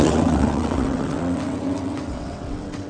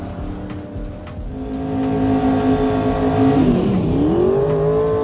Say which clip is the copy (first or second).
first